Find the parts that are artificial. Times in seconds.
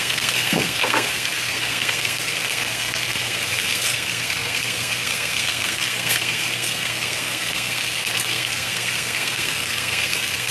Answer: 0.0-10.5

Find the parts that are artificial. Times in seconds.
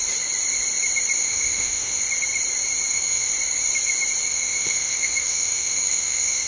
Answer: 1.2-2.0; 2.9-3.3; 4.3-6.5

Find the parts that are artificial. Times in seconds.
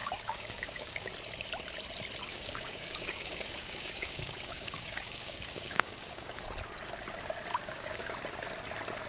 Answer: 0.0-1.1; 2.3-6.3; 7.5-8.1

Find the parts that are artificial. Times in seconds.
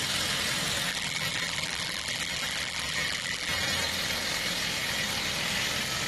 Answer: 0.9-3.5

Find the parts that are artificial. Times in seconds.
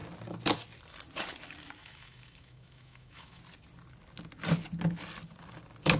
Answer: 1.8-3.4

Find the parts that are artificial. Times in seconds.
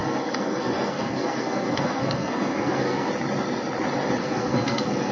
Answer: 0.0-3.1; 4.2-5.1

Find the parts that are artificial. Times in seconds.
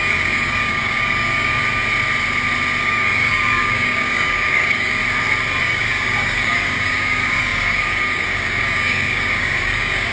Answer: 0.0-1.6; 2.8-5.0; 5.6-10.1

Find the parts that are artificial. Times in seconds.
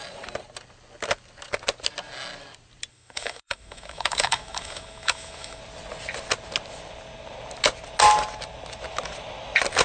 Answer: 2.9-5.6